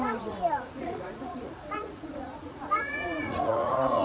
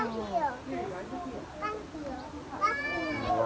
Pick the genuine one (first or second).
second